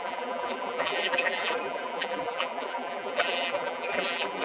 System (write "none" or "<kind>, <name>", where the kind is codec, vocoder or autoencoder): vocoder, BigVGAN v2